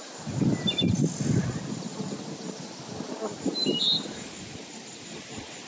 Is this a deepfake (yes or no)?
yes